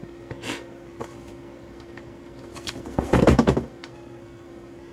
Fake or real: fake